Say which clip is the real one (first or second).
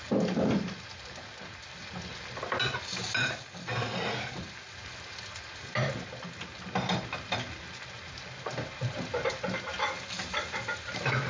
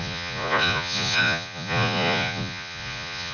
first